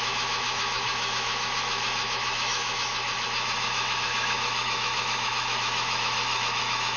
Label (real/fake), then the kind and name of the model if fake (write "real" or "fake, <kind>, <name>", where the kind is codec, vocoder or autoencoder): fake, autoencoder, DAC-VAE